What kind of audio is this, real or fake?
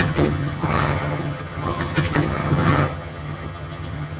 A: fake